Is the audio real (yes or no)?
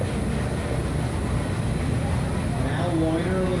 yes